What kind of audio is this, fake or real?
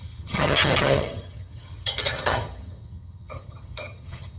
fake